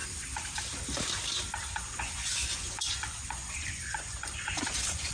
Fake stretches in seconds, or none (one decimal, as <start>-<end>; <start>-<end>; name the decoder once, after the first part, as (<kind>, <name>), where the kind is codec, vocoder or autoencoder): 1.8-5.1 (vocoder, Vocos)